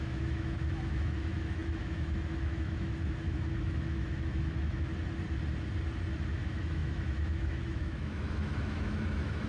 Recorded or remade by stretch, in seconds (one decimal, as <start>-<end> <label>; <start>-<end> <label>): 0.0-4.9 remade; 4.9-6.3 recorded; 6.3-9.5 remade